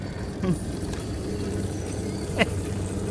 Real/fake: fake